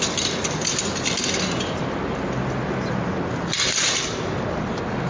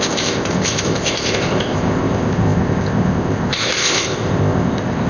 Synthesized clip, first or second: second